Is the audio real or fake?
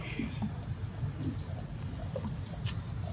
real